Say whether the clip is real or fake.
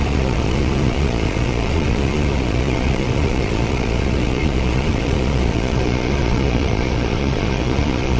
fake